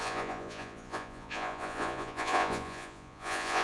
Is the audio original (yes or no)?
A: no